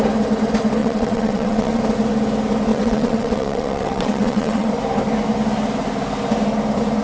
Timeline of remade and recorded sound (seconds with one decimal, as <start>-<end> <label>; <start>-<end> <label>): 0.0-0.8 recorded; 0.8-1.8 remade; 1.8-2.7 recorded; 2.7-4.7 remade; 4.7-7.0 recorded